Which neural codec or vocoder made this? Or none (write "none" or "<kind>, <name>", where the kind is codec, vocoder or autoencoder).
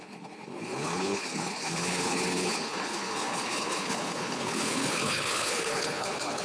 codec, HILCodec